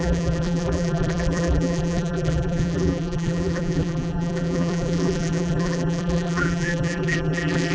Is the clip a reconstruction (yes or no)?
yes